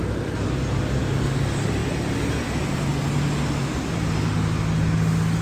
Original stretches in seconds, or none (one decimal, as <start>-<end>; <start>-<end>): 0.0-5.4